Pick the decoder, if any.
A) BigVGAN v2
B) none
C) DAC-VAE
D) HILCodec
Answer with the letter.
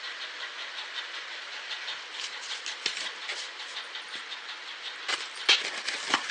B